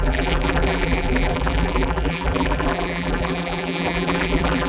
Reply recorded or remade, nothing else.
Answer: remade